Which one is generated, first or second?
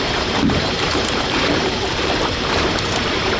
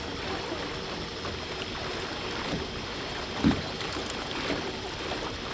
first